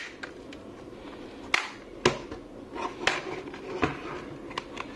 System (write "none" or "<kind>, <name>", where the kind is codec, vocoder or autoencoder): none